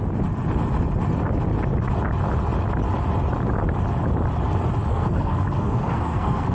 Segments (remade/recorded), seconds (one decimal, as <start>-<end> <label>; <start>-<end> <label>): 0.0-4.9 recorded; 4.9-6.5 remade